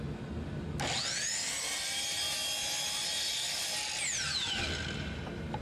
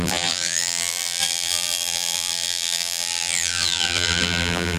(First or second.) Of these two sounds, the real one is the first